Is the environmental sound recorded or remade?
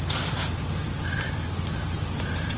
recorded